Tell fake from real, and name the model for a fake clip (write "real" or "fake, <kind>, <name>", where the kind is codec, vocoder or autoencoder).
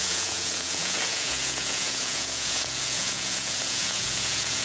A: fake, vocoder, Vocos